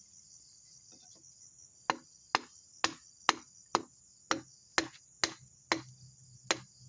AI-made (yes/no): no